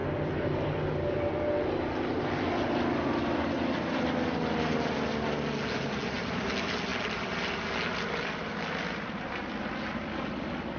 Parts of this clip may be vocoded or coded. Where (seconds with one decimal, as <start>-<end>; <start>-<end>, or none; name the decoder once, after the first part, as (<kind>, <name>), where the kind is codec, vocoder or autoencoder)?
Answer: none